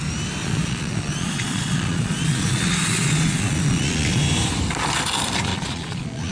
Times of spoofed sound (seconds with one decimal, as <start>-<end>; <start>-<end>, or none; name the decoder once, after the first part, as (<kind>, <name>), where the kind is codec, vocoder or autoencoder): 0.4-4.2 (vocoder, Vocos); 5.5-6.3